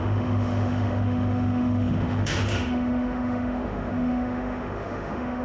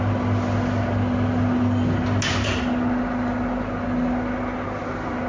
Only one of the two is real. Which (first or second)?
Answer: second